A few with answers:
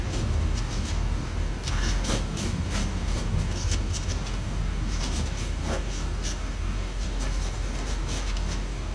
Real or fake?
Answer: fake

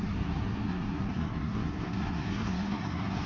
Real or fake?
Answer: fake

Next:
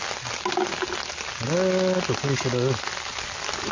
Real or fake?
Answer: real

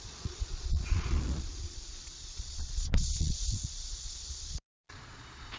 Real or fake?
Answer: fake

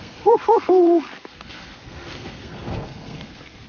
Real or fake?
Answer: fake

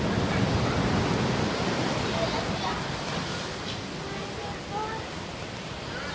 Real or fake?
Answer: real